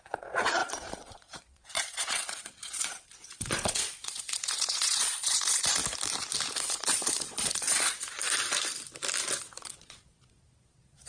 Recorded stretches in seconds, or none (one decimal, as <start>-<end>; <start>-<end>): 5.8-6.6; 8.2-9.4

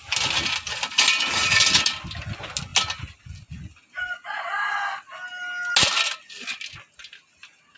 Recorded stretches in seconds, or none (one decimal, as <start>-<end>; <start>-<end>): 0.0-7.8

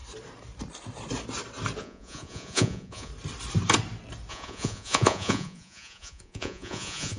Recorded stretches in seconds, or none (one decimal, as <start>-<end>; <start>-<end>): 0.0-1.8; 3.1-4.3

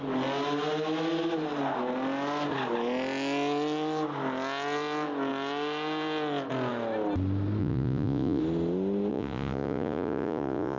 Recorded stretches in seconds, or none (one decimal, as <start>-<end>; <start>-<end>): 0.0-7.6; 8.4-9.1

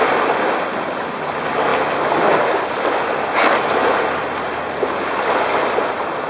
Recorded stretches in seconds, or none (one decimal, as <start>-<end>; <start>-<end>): 0.0-6.3